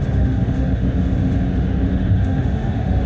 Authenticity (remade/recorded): remade